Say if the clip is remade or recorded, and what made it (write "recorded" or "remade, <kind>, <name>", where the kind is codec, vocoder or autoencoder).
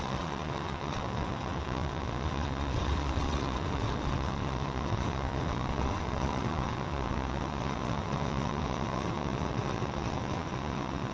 remade, vocoder, WaveNeXt